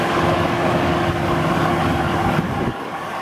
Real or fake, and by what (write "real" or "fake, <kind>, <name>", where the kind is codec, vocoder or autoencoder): fake, codec, DAC